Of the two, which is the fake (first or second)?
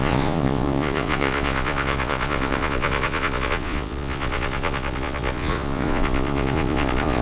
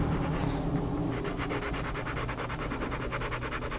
first